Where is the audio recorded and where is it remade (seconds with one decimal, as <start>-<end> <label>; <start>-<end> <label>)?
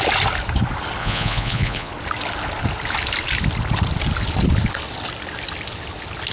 0.0-1.0 recorded; 1.0-1.9 remade; 1.9-6.3 recorded